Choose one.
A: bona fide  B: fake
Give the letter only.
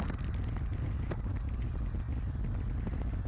A